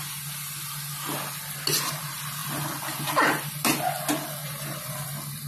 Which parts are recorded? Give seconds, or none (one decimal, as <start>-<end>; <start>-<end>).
0.0-4.4; 4.9-5.5